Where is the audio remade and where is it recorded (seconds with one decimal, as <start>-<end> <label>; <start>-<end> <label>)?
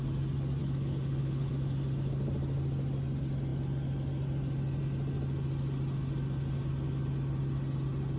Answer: 0.0-0.6 recorded; 0.6-1.5 remade; 1.5-8.2 recorded